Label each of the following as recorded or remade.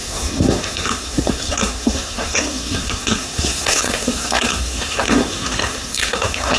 remade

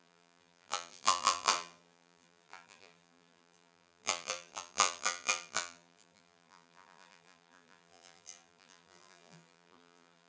remade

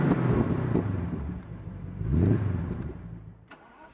remade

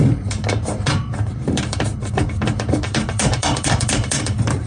remade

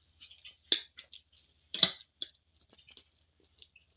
recorded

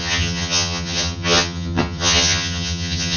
remade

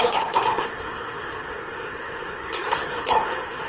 remade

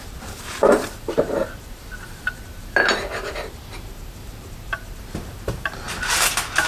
remade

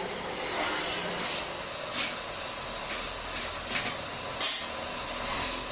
recorded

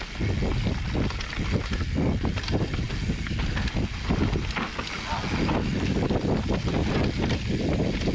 recorded